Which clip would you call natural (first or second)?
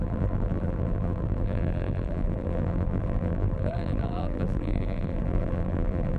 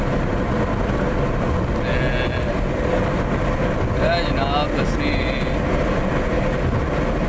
second